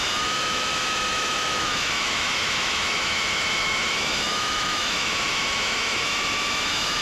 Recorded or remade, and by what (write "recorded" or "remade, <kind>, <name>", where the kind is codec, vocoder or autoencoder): remade, autoencoder, DAC-VAE